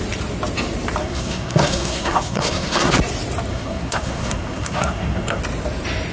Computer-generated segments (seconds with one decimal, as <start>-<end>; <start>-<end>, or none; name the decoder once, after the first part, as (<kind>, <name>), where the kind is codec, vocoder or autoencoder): 1.0-2.9 (codec, SNAC); 3.5-5.4